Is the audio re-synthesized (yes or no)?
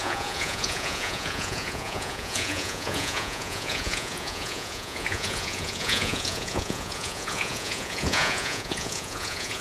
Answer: yes